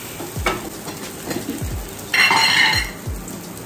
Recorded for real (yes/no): yes